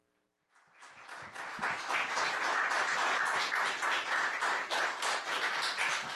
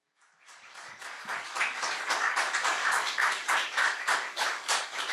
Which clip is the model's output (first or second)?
second